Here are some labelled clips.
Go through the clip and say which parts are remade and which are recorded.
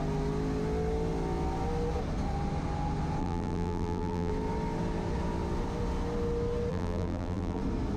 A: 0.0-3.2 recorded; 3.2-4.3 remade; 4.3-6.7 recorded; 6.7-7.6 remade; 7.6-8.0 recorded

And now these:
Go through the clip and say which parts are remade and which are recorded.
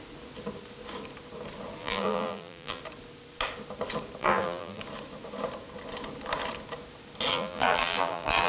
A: 0.0-1.8 recorded; 1.8-2.8 remade; 2.8-4.2 recorded; 4.2-4.8 remade; 4.8-7.3 recorded; 7.3-8.5 remade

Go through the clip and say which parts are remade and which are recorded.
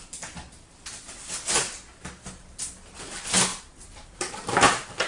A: 0.0-3.5 recorded; 3.5-5.1 remade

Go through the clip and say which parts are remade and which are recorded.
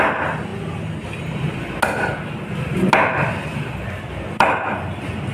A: 0.0-5.3 recorded